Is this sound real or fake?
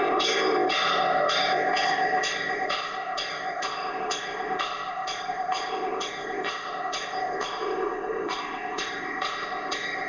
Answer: fake